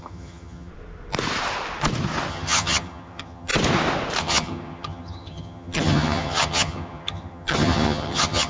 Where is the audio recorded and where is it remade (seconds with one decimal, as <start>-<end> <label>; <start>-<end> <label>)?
0.0-0.7 remade; 0.7-2.3 recorded; 2.3-3.5 remade; 3.5-4.2 recorded; 4.2-8.5 remade